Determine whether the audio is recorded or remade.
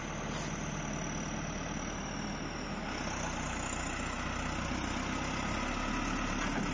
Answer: recorded